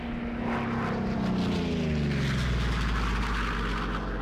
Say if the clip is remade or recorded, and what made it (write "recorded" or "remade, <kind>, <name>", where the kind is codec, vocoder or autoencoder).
recorded